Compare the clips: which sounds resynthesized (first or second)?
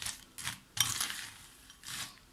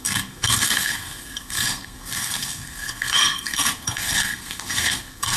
second